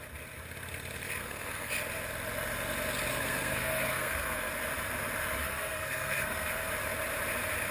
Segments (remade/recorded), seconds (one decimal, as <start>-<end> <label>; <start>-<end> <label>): 0.0-1.2 recorded; 1.2-1.7 remade; 1.7-3.1 recorded; 3.1-4.5 remade; 4.5-5.4 recorded; 5.4-6.7 remade; 6.7-7.7 recorded